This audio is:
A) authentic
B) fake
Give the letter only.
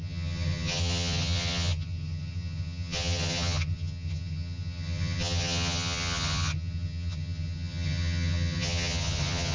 B